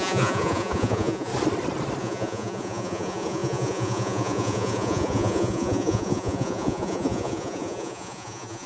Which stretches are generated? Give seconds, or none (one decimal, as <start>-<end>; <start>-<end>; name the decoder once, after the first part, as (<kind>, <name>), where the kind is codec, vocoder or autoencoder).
0.0-1.3 (vocoder, Vocos); 2.0-8.7